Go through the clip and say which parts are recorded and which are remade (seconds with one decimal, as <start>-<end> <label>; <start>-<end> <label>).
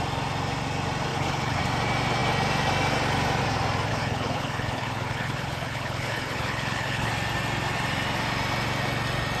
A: 0.0-1.1 recorded; 1.1-1.6 remade; 1.6-3.9 recorded; 3.9-7.1 remade; 7.1-9.4 recorded